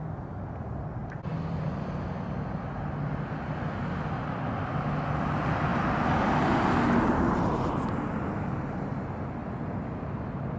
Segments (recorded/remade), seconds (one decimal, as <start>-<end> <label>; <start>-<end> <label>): 0.0-10.6 recorded